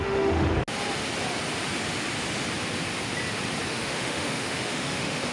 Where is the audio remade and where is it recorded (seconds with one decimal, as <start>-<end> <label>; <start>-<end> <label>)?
0.0-0.5 remade; 0.5-3.7 recorded; 3.7-5.3 remade